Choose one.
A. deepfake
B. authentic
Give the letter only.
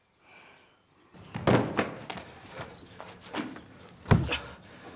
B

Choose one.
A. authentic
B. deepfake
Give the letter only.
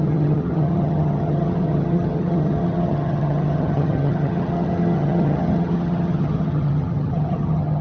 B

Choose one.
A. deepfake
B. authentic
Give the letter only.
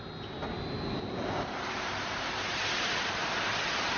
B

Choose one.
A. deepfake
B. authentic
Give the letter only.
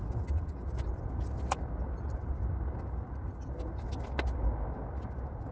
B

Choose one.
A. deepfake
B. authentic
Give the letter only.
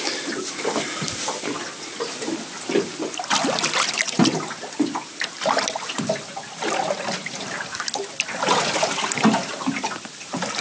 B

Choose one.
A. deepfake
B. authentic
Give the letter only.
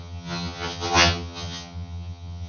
A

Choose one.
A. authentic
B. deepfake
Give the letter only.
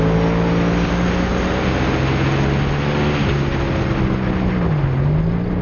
A